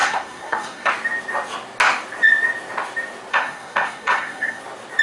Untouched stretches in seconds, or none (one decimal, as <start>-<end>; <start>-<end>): 0.9-3.3; 4.6-5.0